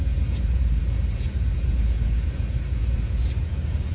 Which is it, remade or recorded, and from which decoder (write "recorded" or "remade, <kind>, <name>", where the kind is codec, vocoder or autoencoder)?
remade, vocoder, Vocos